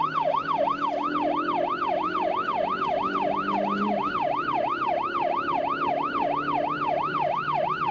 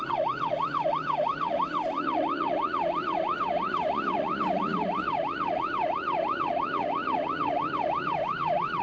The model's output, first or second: second